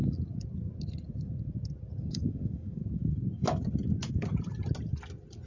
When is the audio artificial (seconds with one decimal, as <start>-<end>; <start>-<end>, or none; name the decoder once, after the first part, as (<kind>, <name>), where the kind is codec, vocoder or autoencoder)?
2.0-2.8 (codec, DAC)